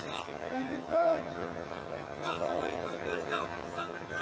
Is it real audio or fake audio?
fake